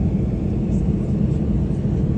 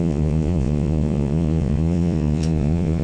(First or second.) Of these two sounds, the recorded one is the first